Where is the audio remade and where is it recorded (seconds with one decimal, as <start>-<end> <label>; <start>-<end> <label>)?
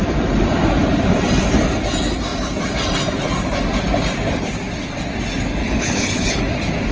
0.0-5.6 recorded; 5.6-6.4 remade; 6.4-6.9 recorded